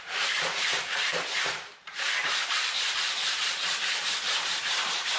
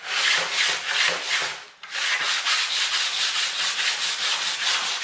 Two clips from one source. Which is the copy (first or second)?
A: first